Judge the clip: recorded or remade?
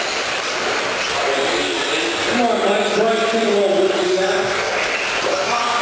recorded